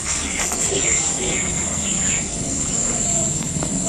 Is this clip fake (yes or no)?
yes